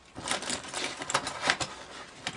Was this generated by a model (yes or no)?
no